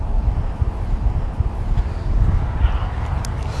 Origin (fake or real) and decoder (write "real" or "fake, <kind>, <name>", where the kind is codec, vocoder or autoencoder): real